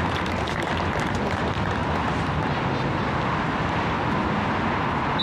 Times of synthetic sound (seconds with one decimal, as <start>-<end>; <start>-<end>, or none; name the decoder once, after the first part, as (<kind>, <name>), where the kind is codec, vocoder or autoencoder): 0.0-0.7 (vocoder, BigVGAN v2); 1.4-1.8

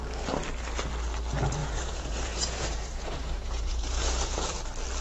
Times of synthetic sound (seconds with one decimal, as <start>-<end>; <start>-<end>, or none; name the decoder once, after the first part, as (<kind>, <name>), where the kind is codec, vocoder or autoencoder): 1.6-4.6 (vocoder, Vocos)

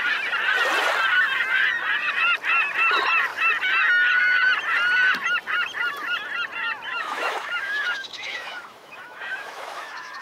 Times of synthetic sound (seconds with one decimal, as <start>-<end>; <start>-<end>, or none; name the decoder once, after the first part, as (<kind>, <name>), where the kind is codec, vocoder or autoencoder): 6.9-10.2 (autoencoder, DAC-VAE)

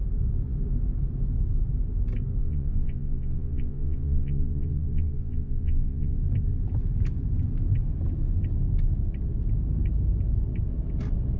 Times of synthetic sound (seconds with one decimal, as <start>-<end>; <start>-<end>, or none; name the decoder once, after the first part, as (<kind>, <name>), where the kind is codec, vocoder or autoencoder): 2.4-6.1 (vocoder, Vocos)

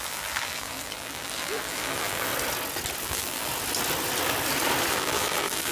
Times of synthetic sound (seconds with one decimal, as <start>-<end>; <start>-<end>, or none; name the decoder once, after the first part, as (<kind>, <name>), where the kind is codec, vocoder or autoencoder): 0.0-2.3 (vocoder, BigVGAN v2); 3.0-3.5; 4.9-5.7